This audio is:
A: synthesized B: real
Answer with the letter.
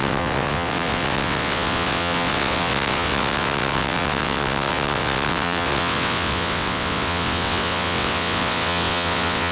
A